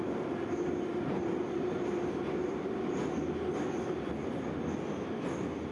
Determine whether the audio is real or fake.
real